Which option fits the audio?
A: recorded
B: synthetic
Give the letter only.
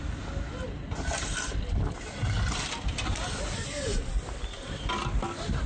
A